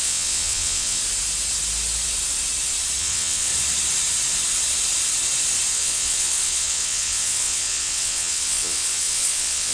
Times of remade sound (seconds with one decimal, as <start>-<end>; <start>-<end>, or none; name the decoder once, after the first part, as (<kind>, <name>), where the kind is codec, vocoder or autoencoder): 0.0-1.0 (vocoder, WaveNeXt); 3.0-3.5; 5.7-9.7

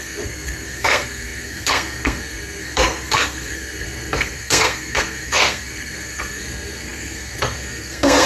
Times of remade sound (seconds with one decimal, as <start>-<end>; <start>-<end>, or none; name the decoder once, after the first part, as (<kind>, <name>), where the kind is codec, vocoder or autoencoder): 0.0-8.3 (codec, SNAC)

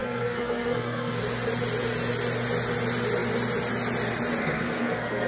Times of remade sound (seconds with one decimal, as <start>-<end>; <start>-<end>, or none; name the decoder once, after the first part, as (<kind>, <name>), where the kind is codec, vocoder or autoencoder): 0.0-1.2 (codec, SNAC); 4.4-5.3

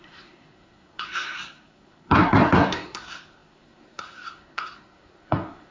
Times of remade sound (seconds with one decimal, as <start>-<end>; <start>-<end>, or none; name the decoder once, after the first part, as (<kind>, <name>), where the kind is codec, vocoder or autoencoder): 0.0-5.7 (codec, SNAC)

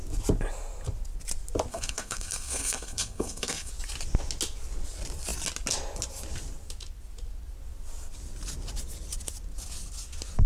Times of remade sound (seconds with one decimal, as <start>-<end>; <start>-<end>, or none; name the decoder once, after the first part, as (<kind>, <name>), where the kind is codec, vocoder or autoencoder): 1.7-3.7 (codec, SNAC)